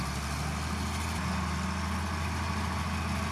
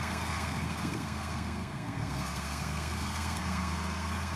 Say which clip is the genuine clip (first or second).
first